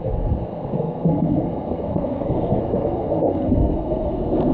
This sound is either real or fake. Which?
fake